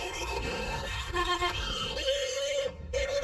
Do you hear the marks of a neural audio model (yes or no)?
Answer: yes